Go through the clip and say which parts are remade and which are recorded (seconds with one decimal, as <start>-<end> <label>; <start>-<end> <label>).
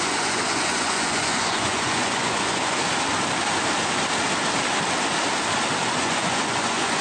0.0-2.8 remade; 2.8-5.8 recorded; 5.8-7.0 remade